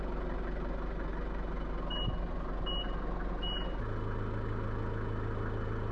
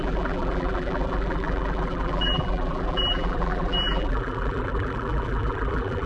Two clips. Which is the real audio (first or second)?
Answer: first